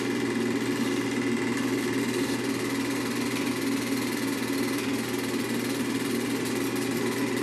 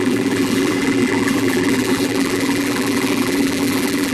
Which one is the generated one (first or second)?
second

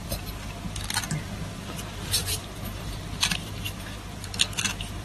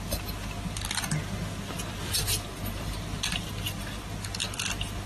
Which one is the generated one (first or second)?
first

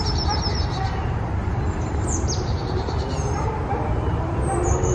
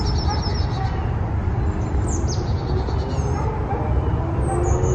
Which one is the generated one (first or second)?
first